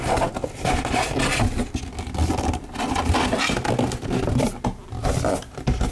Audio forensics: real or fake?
real